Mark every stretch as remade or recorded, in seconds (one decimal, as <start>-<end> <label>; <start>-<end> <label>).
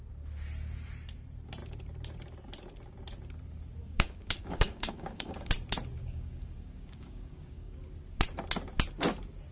0.0-3.8 recorded; 3.8-5.5 remade; 5.5-6.0 recorded; 6.0-7.8 remade; 7.8-9.5 recorded